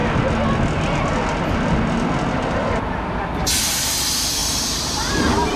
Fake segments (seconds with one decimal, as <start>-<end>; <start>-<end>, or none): 4.4-5.6